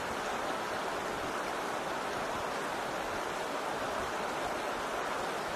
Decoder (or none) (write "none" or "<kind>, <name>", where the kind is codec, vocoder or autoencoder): none